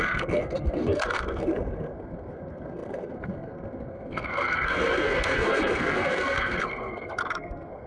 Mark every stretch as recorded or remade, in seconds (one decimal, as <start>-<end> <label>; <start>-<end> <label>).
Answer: 0.0-7.9 remade